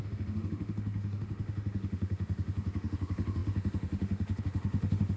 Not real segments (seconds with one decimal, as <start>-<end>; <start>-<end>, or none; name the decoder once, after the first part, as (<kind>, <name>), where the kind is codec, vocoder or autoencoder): 0.0-5.2 (autoencoder, DAC-VAE)